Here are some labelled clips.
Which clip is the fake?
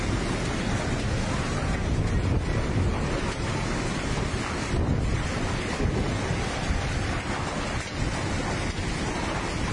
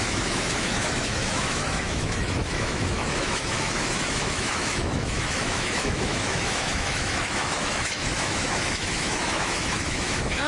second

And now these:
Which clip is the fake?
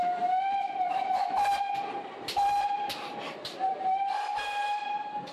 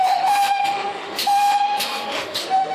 second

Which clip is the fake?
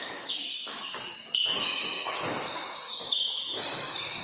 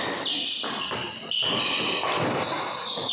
first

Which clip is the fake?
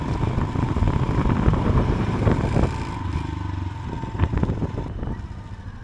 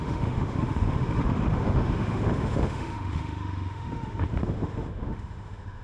second